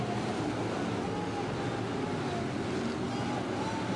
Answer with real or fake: real